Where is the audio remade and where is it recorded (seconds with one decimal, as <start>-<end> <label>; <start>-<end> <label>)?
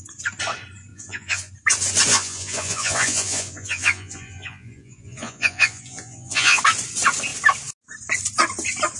0.0-0.9 recorded; 0.9-1.5 remade; 1.5-2.1 recorded; 2.1-6.6 remade; 6.6-9.0 recorded